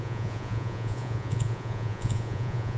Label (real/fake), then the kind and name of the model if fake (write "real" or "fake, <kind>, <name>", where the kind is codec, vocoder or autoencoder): fake, vocoder, Vocos